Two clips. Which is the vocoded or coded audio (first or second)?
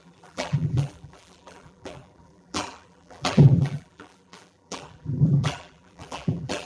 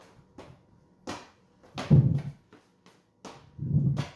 first